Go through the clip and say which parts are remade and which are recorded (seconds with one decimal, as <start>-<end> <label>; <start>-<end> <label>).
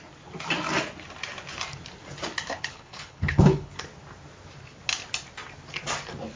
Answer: 0.0-2.5 recorded; 2.5-3.8 remade; 3.8-6.4 recorded